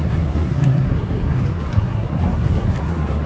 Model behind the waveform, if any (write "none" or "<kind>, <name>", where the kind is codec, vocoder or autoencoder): codec, SNAC